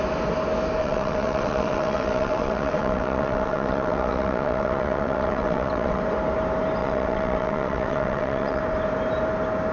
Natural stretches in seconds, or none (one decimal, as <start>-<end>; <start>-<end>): 0.0-0.8; 6.0-6.8; 8.6-9.7